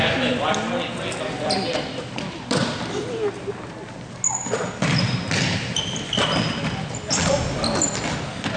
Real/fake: real